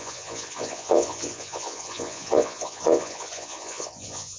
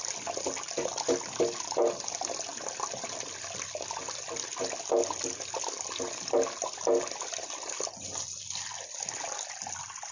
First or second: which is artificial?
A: first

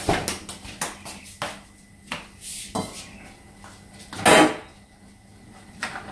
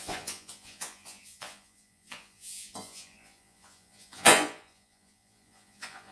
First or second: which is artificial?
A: second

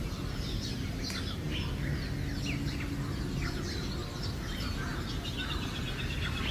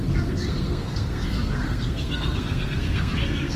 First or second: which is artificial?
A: second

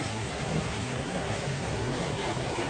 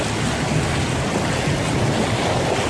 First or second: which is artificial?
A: first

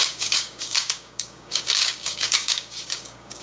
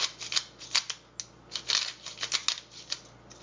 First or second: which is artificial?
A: first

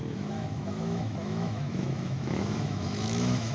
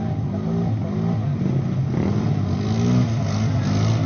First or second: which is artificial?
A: first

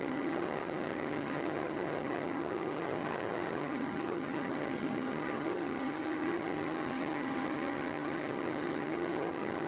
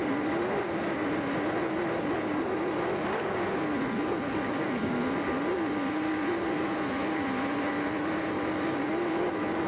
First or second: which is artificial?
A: first